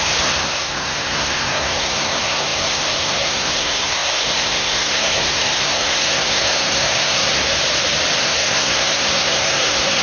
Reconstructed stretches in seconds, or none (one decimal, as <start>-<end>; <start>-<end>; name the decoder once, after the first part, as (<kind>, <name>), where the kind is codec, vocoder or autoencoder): 0.0-7.5 (codec, SNAC); 8.2-10.0